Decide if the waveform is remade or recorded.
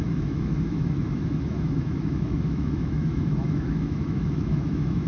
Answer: remade